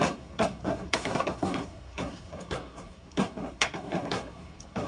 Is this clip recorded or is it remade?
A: remade